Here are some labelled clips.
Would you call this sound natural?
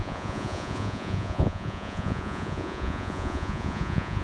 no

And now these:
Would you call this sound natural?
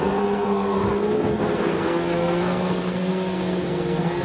no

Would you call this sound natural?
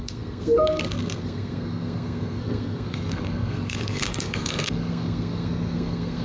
no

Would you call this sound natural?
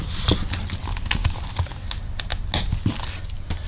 yes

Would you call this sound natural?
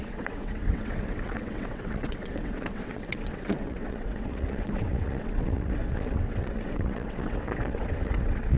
no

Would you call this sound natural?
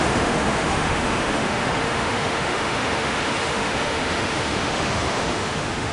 no